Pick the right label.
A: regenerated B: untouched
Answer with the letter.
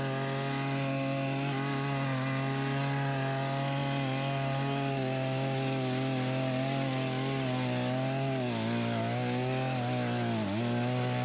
B